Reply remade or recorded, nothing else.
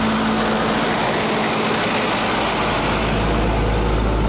recorded